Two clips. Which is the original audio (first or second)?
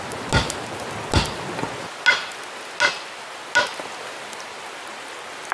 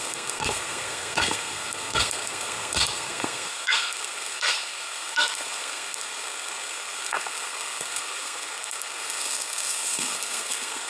first